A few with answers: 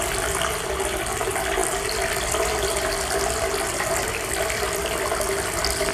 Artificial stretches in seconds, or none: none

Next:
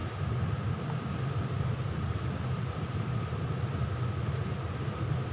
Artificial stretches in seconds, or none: none